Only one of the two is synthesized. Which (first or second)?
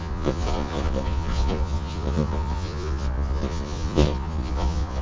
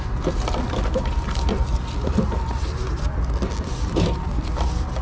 first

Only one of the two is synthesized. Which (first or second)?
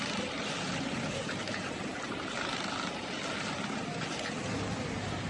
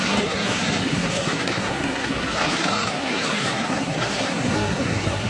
second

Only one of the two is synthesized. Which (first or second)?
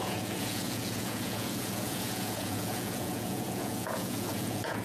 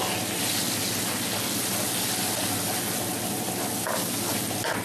first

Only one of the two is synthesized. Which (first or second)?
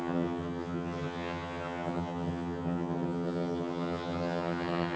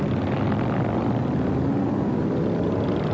first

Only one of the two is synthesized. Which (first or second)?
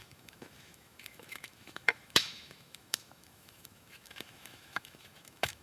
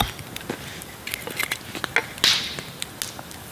first